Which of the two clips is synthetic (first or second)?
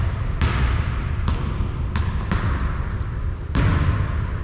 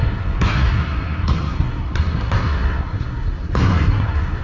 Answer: second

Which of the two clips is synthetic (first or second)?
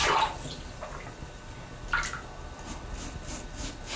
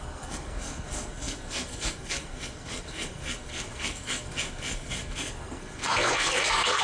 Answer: second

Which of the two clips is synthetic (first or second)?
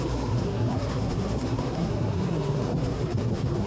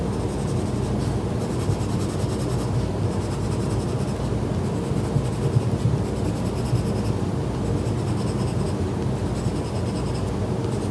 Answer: first